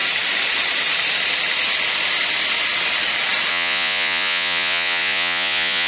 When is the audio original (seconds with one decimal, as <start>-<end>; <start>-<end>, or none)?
0.0-3.5